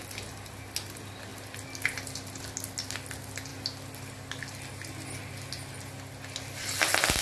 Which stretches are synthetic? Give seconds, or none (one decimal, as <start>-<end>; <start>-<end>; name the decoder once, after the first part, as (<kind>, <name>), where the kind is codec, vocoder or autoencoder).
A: none